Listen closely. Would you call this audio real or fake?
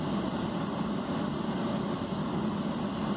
real